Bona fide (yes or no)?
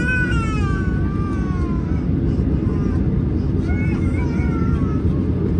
yes